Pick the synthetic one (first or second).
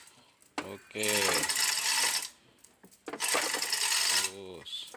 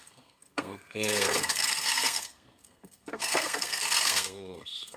second